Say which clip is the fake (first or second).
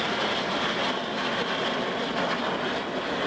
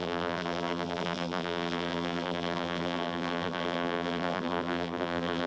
second